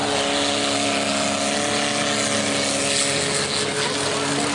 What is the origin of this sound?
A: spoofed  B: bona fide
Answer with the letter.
B